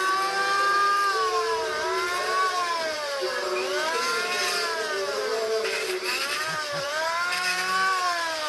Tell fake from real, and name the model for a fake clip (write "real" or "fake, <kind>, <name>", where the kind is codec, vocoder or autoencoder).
fake, vocoder, BigVGAN v2